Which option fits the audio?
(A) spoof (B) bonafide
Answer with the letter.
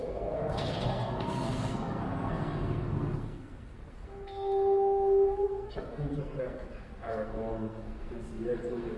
A